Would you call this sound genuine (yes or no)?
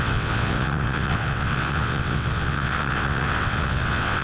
no